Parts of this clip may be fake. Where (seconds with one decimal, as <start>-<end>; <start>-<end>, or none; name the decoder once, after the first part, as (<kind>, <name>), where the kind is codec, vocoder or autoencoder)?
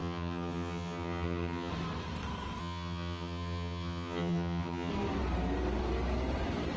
0.0-1.7 (vocoder, HiFi-GAN); 2.6-4.9